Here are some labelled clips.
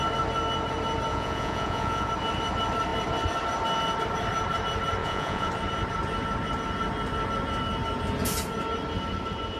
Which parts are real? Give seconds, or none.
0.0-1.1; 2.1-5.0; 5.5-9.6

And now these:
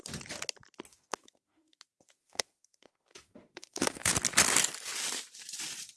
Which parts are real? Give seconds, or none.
0.0-0.9; 4.1-6.0

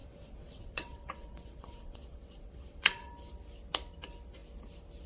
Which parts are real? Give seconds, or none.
3.1-5.1

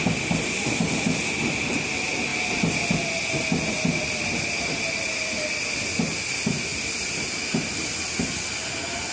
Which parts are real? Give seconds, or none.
0.0-9.1

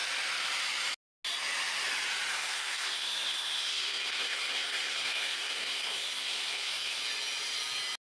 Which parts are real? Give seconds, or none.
0.0-2.3; 7.0-8.1

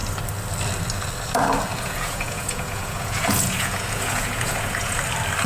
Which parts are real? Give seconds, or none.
0.0-1.7; 5.0-5.5

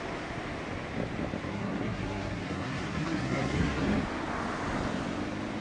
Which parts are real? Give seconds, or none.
0.0-1.5; 4.0-5.6

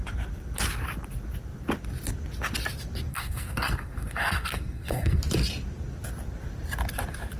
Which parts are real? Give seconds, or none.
0.0-3.1; 5.2-7.4